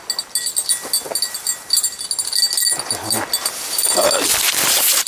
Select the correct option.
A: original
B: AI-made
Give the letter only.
A